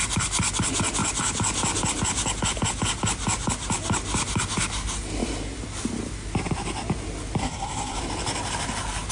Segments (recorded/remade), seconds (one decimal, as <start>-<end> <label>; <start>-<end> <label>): 0.0-7.4 recorded; 7.4-8.0 remade; 8.0-9.1 recorded